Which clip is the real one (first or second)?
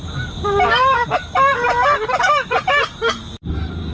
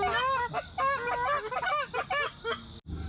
second